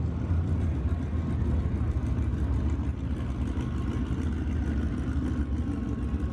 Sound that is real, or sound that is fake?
real